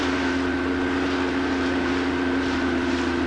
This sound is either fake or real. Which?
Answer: real